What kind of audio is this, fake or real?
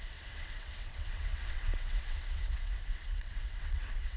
fake